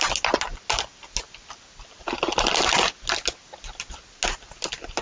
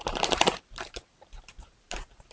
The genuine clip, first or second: first